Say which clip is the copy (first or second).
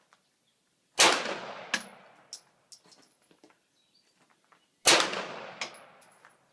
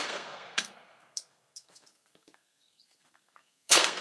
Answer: second